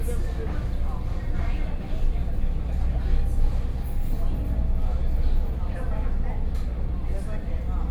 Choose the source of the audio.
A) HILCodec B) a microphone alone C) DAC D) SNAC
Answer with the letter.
B